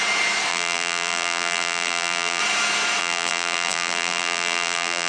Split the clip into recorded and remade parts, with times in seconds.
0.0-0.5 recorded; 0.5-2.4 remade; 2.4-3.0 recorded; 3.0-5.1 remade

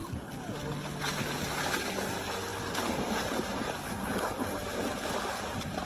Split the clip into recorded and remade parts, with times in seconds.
0.0-5.9 recorded

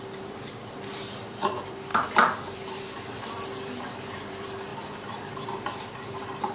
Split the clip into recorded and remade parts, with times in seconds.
0.0-6.5 remade

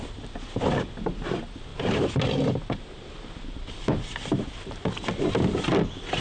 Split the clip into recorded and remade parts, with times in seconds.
0.0-1.7 recorded; 1.7-3.8 remade; 3.8-6.2 recorded

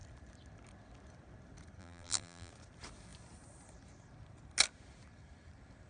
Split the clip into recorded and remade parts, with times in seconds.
0.0-1.8 recorded; 1.8-2.5 remade; 2.5-5.9 recorded

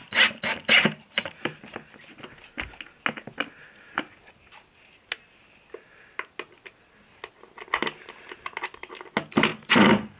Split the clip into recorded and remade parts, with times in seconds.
0.0-1.6 remade; 1.6-9.5 recorded; 9.5-10.2 remade